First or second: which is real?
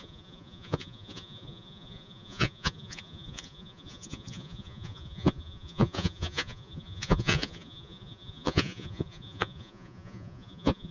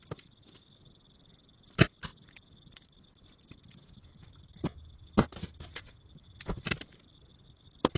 second